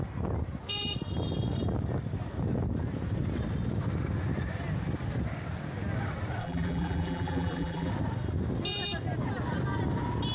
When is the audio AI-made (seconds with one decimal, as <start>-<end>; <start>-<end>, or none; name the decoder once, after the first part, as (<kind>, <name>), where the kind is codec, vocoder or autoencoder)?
6.4-7.9 (vocoder, BigVGAN v2)